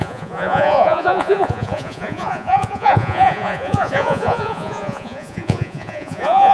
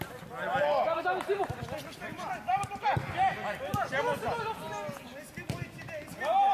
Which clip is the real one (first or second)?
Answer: second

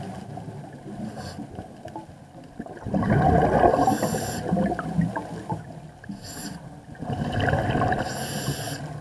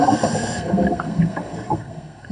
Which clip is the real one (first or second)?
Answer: first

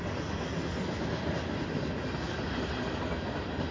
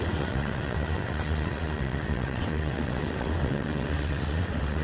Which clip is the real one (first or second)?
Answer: first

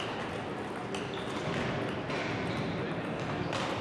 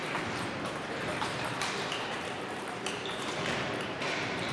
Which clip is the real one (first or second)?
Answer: first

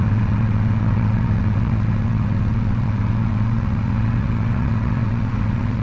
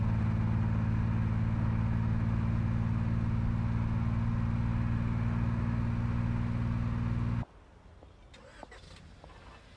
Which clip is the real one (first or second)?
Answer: second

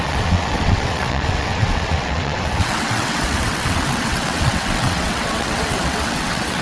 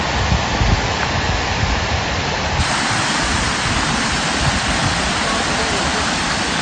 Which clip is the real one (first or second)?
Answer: second